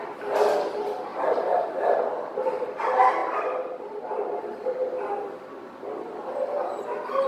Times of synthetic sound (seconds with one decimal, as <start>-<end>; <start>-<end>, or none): 1.1-2.8